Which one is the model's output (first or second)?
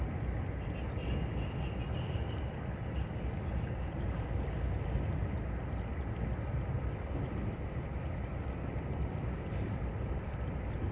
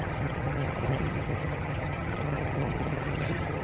second